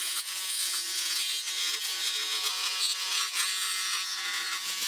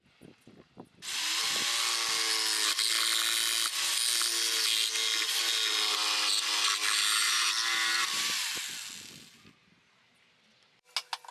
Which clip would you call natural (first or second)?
second